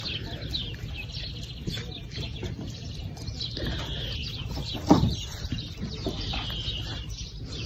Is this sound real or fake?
real